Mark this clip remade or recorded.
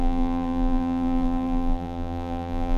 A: remade